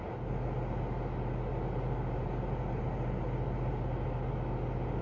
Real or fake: real